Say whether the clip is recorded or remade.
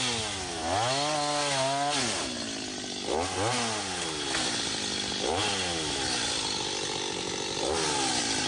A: recorded